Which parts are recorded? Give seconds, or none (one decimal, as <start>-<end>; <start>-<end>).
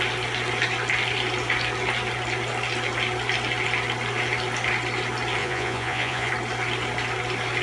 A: 0.0-5.4; 6.3-7.6